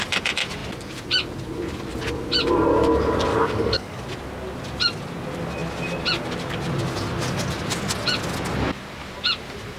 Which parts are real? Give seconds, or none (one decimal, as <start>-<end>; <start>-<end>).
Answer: 0.0-3.3; 4.0-9.8